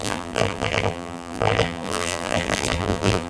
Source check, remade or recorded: remade